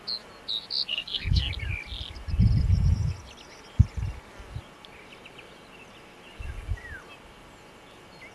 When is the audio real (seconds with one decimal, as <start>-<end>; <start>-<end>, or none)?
0.0-0.9; 1.5-8.3